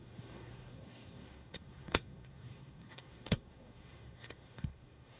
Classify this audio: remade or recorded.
remade